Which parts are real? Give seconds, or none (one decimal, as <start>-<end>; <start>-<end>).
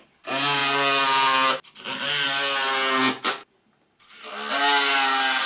0.0-5.5